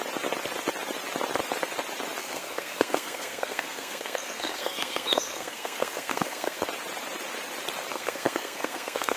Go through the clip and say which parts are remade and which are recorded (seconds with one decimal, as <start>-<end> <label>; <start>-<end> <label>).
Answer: 0.0-2.2 recorded; 2.2-6.6 remade; 6.6-7.9 recorded; 7.9-9.2 remade